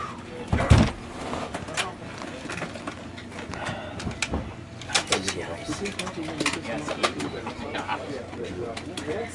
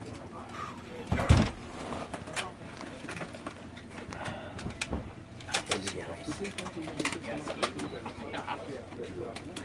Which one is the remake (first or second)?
second